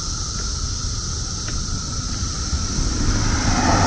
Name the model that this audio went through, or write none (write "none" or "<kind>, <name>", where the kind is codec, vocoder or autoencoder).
none